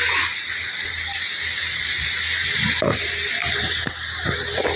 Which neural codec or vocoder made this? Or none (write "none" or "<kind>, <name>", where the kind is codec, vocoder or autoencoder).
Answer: none